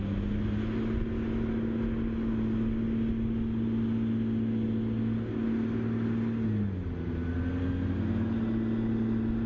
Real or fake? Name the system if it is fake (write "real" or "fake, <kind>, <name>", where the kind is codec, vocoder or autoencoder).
real